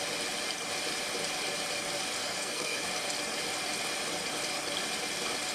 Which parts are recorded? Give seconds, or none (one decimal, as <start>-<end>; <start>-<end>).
0.0-2.2; 2.9-5.5